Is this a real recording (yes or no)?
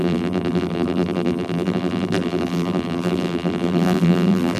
no